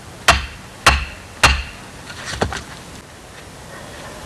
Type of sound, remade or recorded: recorded